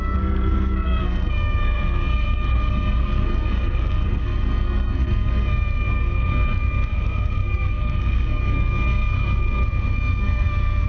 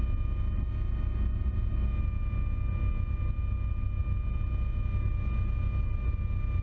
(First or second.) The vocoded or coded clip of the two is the first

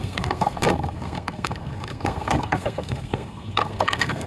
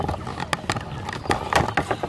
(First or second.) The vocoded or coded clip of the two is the first